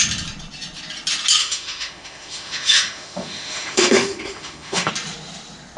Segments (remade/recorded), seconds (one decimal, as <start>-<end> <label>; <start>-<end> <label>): 0.0-1.4 recorded; 1.4-4.9 remade; 4.9-5.8 recorded